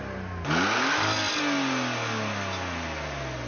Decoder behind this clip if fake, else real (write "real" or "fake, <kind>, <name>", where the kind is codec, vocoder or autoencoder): real